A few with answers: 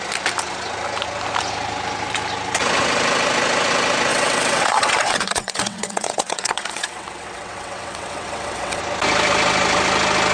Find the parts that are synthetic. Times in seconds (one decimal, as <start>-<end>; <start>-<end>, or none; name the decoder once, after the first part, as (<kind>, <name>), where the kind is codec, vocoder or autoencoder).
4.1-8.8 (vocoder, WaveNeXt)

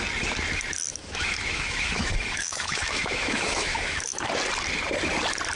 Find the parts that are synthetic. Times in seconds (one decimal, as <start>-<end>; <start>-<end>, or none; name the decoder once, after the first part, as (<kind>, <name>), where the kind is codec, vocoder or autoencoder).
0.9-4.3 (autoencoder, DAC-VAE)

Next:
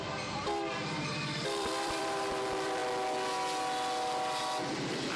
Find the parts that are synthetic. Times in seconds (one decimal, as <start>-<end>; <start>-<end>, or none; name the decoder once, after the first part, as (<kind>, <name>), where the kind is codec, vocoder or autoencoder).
0.0-2.8 (vocoder, BigVGAN v2)

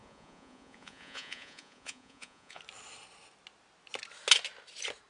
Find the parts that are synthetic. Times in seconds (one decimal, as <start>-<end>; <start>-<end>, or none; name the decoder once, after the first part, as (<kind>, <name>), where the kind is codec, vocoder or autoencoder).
0.0-2.6 (vocoder, Vocos)

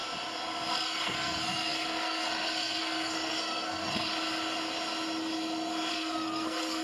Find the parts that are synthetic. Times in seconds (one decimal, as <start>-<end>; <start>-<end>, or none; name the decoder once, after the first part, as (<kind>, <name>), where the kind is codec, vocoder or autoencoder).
0.7-4.1 (codec, SNAC); 5.9-6.8

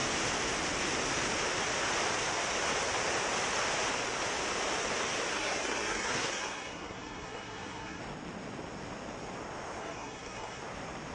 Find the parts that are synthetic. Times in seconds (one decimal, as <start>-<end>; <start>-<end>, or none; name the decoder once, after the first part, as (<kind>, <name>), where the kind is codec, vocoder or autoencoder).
5.3-8.0 (codec, SNAC); 9.8-10.6